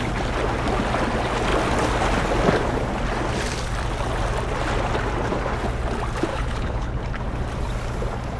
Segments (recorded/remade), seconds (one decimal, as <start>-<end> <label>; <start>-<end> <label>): 0.0-6.3 recorded; 6.3-7.0 remade; 7.0-8.4 recorded